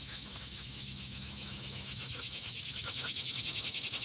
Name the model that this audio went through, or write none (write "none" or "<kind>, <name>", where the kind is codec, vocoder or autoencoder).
autoencoder, DAC-VAE